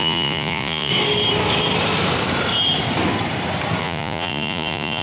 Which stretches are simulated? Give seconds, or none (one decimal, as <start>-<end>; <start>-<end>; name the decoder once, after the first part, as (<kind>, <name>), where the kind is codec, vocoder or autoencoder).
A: 0.0-0.9 (vocoder, Vocos); 3.8-5.0